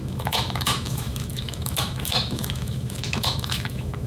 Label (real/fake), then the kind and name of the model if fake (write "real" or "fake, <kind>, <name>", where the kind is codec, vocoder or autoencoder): fake, autoencoder, DAC-VAE